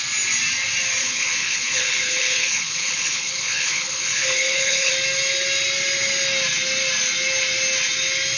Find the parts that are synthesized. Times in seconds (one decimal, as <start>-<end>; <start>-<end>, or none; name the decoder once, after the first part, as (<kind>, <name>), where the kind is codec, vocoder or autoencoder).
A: 1.0-4.9 (codec, HILCodec)